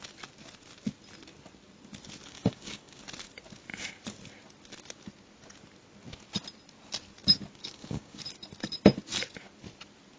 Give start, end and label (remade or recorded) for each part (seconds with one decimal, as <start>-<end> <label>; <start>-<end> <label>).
0.0-2.3 recorded; 2.3-3.0 remade; 3.0-7.6 recorded; 7.6-8.2 remade; 8.2-10.2 recorded

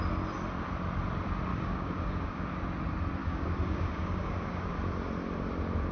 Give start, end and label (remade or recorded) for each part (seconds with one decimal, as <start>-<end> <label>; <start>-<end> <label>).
0.0-1.5 recorded; 1.5-2.5 remade; 2.5-3.2 recorded; 3.2-4.7 remade; 4.7-5.9 recorded

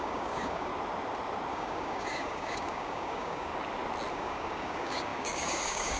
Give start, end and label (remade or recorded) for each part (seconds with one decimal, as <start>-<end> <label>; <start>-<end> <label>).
0.0-0.7 remade; 0.7-1.5 recorded; 1.5-3.5 remade; 3.5-4.1 recorded; 4.1-6.0 remade

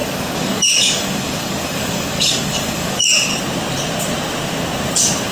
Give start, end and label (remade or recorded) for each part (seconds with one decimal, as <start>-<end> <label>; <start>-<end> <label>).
0.0-3.3 remade; 3.3-5.3 recorded

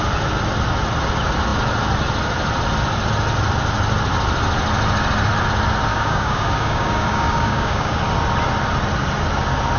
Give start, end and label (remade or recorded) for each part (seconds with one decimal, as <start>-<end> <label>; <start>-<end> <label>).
0.0-5.9 recorded; 5.9-8.0 remade; 8.0-9.8 recorded